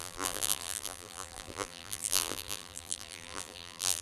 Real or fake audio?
fake